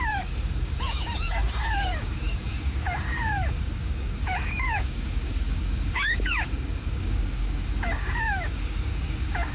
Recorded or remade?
remade